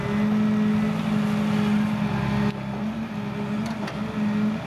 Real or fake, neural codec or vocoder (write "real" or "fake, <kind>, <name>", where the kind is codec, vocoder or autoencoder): real